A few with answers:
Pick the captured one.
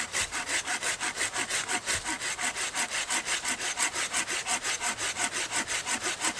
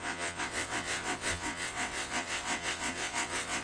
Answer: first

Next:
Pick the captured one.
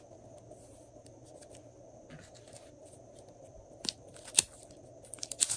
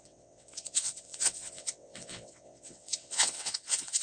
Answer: first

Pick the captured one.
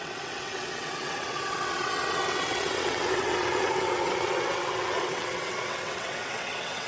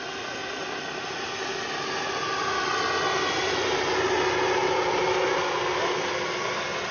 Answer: second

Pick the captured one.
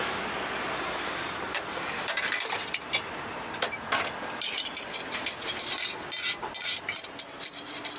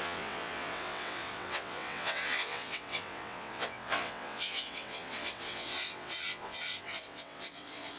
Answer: first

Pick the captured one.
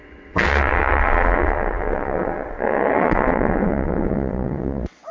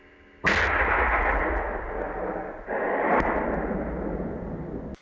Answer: second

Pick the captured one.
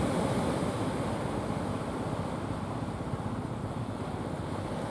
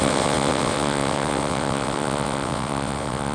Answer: first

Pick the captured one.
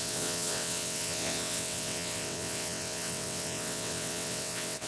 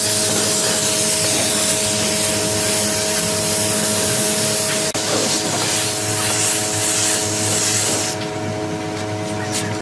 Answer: second